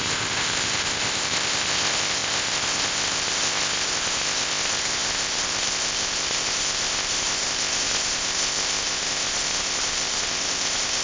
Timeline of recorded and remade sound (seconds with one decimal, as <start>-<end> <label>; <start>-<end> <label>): 0.0-11.0 remade